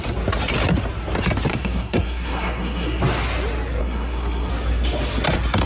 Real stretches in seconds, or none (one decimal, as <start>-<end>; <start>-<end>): 0.0-1.5; 3.0-3.8; 4.5-5.7